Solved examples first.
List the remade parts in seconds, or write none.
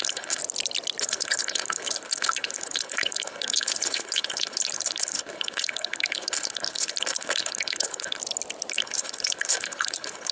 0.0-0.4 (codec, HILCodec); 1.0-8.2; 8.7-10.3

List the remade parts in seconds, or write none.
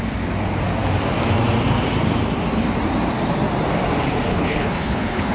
4.3-5.3 (codec, HILCodec)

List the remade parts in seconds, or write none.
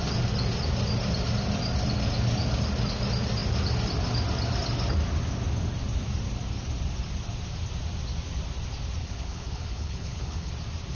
9.0-10.5 (codec, HILCodec)